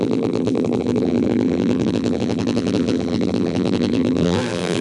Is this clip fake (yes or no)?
yes